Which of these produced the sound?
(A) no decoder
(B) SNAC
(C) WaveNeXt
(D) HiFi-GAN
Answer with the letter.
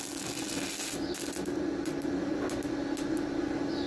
A